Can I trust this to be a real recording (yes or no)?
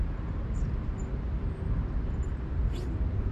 yes